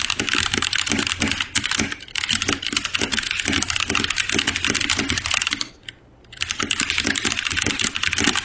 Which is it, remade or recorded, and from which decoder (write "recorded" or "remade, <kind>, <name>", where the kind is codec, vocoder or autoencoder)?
recorded